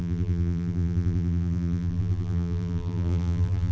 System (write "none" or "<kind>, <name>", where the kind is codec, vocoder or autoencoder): vocoder, BigVGAN v2